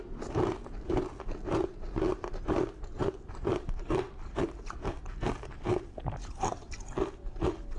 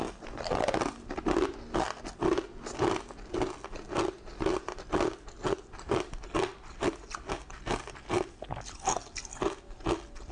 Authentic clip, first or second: second